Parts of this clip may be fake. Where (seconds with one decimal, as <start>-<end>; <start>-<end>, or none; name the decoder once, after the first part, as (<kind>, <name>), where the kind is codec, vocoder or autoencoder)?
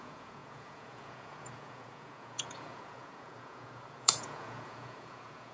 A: 0.0-5.5 (vocoder, Vocos)